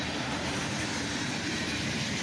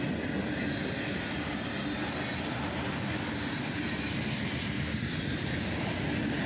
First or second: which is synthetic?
first